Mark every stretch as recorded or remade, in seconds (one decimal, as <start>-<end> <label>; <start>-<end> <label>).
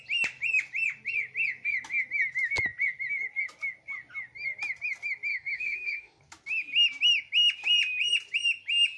0.0-5.3 recorded; 5.3-6.2 remade; 6.2-9.0 recorded